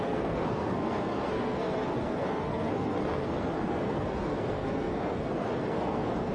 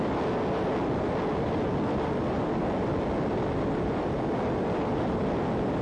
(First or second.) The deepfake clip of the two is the first